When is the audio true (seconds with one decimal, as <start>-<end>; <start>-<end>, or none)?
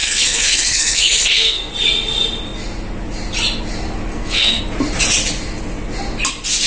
1.7-4.1; 4.6-6.7